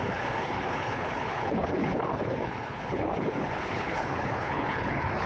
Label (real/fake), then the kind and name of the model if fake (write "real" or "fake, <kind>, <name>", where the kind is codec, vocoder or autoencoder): fake, codec, HILCodec